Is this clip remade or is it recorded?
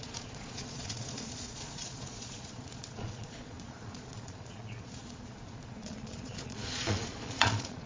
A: remade